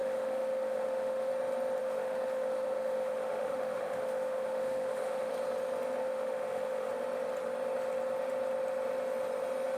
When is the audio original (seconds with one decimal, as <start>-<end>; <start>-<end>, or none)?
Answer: 1.3-1.8; 5.3-6.0; 6.9-9.8